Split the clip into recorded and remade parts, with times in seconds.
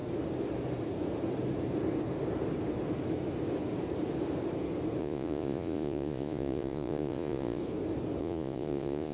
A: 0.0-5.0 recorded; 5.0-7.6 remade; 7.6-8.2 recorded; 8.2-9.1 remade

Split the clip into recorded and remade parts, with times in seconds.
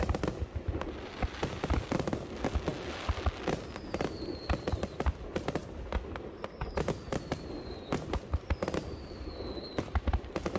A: 0.0-10.6 recorded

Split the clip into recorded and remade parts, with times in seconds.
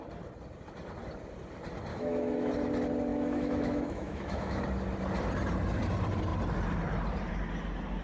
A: 0.0-1.9 recorded; 1.9-2.5 remade; 2.5-3.1 recorded; 3.1-4.6 remade; 4.6-8.0 recorded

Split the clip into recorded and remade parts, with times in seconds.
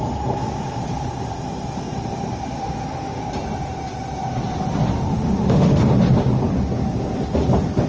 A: 0.0-2.6 recorded; 2.6-3.2 remade; 3.2-5.1 recorded; 5.1-5.8 remade; 5.8-7.9 recorded